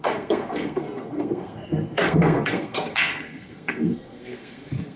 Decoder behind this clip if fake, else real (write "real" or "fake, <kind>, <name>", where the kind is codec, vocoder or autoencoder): fake, codec, SNAC